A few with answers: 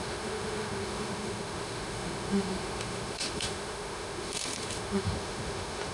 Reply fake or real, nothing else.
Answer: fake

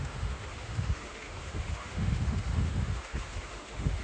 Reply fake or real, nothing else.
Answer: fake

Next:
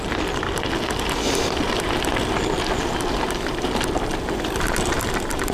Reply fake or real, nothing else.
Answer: real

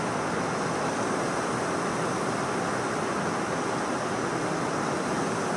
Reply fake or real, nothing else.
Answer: real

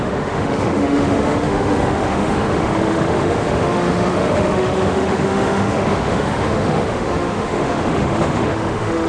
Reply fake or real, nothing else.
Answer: fake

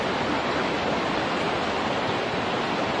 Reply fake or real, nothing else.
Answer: real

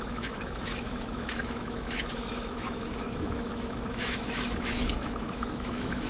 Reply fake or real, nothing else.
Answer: fake